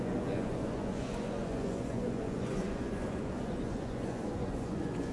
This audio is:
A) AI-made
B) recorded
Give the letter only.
A